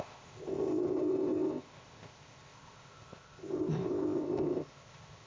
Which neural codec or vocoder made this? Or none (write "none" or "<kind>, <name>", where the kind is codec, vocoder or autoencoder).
codec, ZipCodec